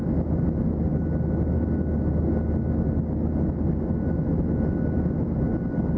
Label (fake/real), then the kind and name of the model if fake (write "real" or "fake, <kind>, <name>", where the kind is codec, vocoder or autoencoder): real